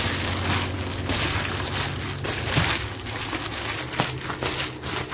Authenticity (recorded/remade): recorded